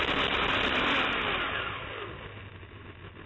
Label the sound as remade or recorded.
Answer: recorded